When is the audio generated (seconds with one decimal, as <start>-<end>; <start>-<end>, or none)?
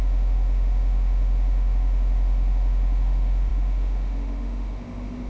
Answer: 0.0-5.3